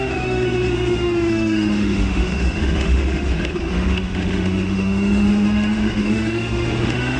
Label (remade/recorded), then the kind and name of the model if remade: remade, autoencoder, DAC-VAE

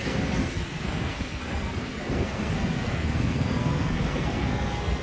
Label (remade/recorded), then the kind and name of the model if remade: remade, codec, SNAC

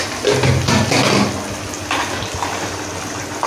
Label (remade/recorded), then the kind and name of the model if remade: recorded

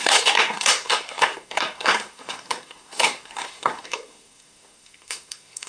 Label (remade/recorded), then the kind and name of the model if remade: remade, codec, SNAC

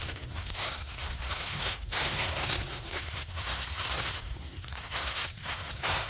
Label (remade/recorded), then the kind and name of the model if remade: remade, codec, SNAC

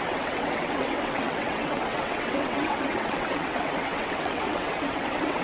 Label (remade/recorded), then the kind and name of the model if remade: remade, vocoder, WaveNeXt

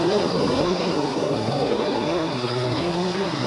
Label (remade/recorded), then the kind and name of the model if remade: remade, codec, SNAC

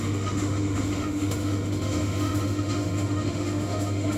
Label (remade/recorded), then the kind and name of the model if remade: remade, autoencoder, DAC-VAE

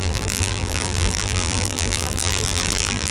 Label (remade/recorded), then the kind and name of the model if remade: remade, vocoder, BigVGAN v2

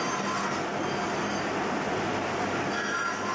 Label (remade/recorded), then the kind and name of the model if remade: recorded